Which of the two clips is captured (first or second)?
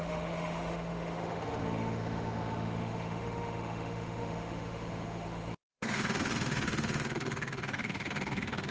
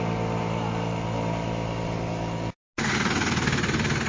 second